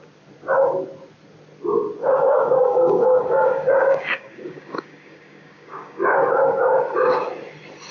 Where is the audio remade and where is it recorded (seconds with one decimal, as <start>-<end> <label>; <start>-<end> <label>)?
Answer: 0.0-2.0 recorded; 2.0-6.0 remade; 6.0-7.9 recorded